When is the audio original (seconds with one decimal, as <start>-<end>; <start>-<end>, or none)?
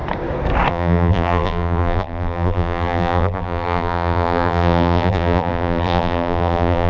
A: 0.0-0.7